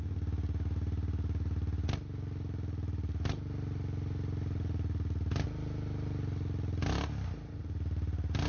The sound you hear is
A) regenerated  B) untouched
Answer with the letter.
B